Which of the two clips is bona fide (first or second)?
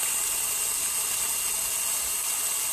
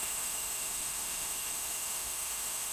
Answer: first